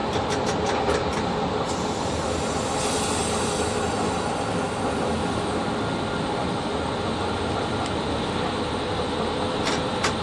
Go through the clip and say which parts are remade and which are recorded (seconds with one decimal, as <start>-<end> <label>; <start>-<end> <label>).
0.0-10.2 recorded